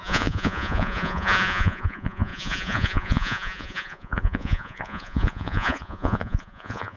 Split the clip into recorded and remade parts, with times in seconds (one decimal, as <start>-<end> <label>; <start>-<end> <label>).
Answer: 0.0-7.0 remade